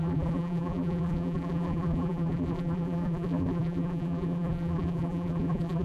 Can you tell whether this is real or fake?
fake